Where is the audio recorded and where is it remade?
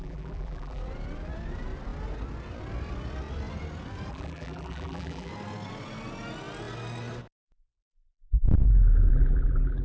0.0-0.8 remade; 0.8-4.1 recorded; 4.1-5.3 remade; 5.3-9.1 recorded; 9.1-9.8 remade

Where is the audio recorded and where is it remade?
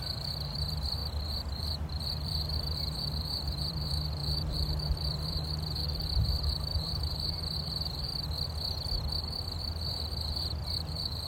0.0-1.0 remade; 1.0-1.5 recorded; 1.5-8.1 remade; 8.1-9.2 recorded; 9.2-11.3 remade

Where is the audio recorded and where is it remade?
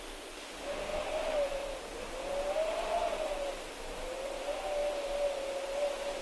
0.0-0.9 recorded; 0.9-1.6 remade; 1.6-6.2 recorded